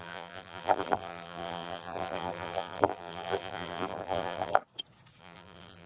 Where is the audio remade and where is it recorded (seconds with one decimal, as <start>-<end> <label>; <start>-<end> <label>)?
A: 0.0-4.6 remade; 4.6-5.2 recorded; 5.2-5.9 remade